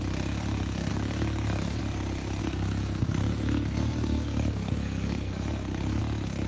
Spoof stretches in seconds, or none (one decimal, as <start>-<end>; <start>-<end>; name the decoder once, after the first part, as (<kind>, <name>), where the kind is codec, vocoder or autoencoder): 0.9-1.8 (codec, SNAC); 2.4-6.0